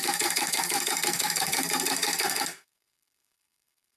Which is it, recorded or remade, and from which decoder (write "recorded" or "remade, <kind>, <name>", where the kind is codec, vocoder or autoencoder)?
remade, codec, SNAC